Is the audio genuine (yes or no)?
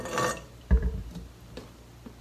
yes